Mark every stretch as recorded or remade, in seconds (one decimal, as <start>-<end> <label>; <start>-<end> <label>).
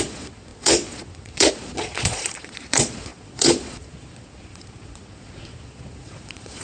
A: 0.0-6.6 remade